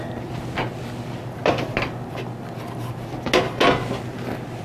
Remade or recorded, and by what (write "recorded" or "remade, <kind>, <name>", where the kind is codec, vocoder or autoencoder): recorded